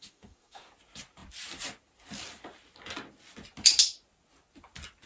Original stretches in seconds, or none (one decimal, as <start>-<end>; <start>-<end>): 0.7-5.1